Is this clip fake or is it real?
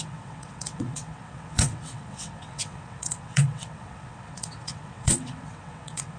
fake